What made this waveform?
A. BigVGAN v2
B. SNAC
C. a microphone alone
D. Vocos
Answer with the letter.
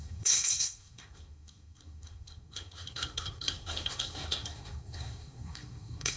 B